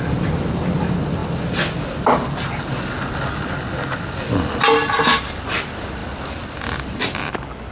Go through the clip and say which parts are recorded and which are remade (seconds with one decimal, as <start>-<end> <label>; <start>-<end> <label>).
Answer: 0.0-7.7 recorded